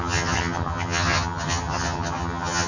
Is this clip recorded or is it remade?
remade